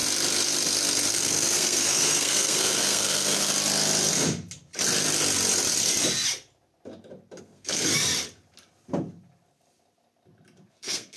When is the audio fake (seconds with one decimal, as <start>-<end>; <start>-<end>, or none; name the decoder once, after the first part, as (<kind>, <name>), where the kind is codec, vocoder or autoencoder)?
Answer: 1.1-3.5 (codec, SNAC); 7.4-7.9; 10.7-11.2